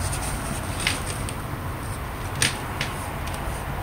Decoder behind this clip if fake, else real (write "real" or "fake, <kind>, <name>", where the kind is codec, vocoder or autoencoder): real